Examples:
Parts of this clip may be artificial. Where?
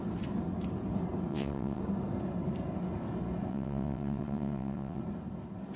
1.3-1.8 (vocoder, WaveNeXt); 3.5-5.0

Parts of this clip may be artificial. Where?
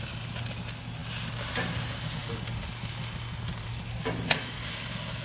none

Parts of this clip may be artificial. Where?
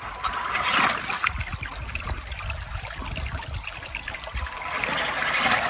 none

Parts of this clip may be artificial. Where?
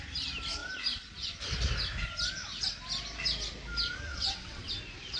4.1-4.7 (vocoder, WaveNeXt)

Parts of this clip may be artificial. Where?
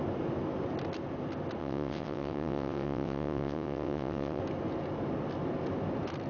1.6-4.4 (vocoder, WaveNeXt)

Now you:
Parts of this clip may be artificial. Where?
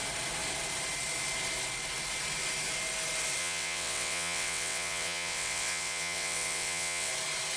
3.4-7.1 (vocoder, WaveNeXt)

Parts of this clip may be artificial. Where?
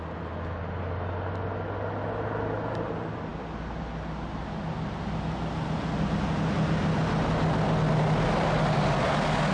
none